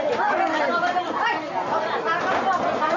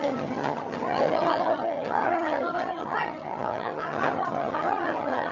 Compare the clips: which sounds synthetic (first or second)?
second